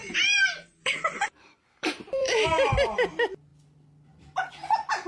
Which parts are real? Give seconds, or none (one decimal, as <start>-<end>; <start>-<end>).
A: 3.1-5.1